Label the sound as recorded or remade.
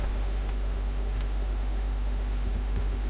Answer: remade